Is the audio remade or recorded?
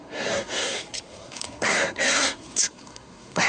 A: remade